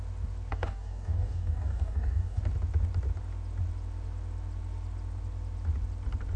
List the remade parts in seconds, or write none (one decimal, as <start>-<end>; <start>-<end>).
0.5-2.4